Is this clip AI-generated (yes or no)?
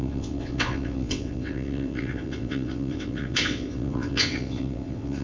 yes